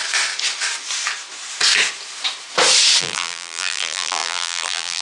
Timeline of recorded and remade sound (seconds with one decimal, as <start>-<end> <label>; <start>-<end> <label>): 0.0-3.0 recorded; 3.0-5.0 remade

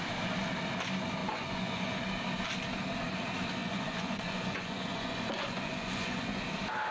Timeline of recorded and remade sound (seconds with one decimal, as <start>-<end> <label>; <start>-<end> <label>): 0.0-1.2 recorded; 1.2-2.0 remade; 2.0-3.6 recorded; 3.6-6.4 remade; 6.4-6.9 recorded

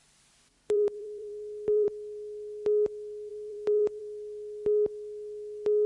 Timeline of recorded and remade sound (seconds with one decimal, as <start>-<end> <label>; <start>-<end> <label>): 0.0-1.9 remade; 1.9-3.3 recorded; 3.3-4.0 remade; 4.0-5.9 recorded

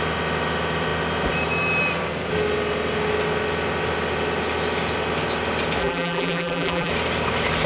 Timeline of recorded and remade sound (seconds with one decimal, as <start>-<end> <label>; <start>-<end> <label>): 0.0-5.8 recorded; 5.8-6.9 remade; 6.9-7.7 recorded